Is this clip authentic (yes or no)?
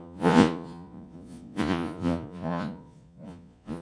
no